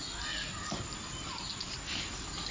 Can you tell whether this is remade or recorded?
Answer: recorded